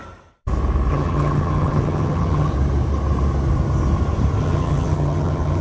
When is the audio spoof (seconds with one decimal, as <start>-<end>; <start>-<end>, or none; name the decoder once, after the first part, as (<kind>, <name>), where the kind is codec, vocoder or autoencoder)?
0.9-2.5 (vocoder, HiFi-GAN); 4.4-5.6

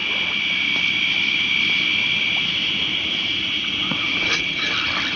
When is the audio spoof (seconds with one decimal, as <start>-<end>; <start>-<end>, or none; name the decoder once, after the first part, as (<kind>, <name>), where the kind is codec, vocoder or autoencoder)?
3.4-4.7 (vocoder, Vocos)

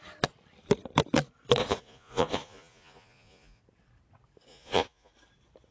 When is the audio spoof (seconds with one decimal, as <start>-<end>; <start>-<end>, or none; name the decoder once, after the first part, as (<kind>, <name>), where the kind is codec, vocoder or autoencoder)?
1.6-3.6 (vocoder, Vocos); 4.5-5.1

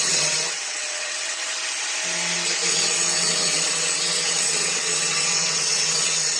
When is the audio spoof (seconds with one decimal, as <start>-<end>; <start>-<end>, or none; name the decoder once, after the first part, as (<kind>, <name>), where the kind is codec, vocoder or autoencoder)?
0.0-1.4 (vocoder, WaveNeXt); 2.7-6.4